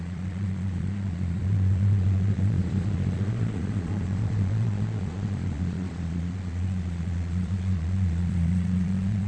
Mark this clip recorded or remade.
remade